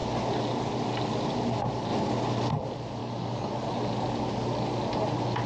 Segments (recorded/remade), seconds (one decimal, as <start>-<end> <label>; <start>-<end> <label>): 0.0-3.0 recorded; 3.0-3.5 remade; 3.5-5.5 recorded